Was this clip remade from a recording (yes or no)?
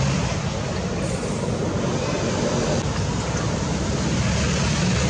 no